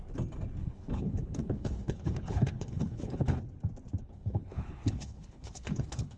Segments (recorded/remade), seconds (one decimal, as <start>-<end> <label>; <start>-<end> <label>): 0.0-0.6 recorded; 0.6-3.4 remade; 3.4-4.0 recorded; 4.0-6.2 remade